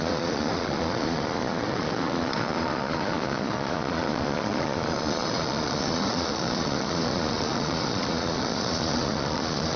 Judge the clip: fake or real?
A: fake